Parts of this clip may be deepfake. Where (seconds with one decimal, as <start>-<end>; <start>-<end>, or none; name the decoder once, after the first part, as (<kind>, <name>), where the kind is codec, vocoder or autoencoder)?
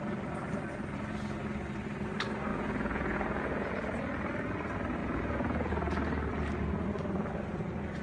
2.5-3.7 (vocoder, Vocos); 5.0-5.7